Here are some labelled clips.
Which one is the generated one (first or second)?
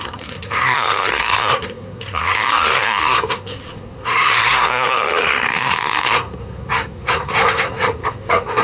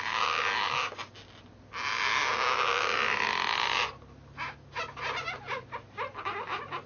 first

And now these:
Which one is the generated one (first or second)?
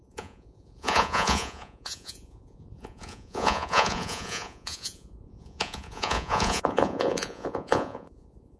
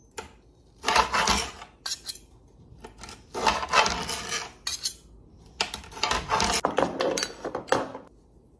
first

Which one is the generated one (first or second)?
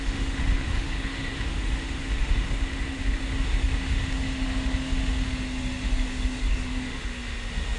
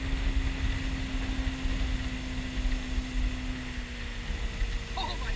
first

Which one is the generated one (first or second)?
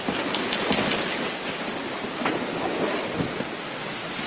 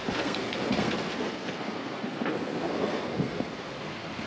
second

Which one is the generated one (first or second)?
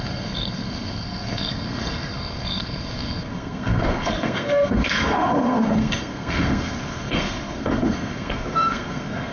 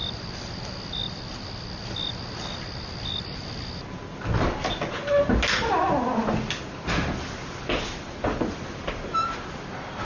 first